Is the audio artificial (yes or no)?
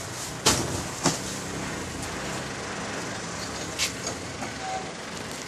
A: no